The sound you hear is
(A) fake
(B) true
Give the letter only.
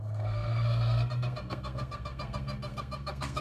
A